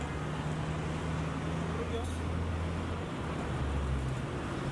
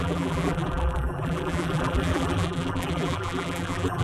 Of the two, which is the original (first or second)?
first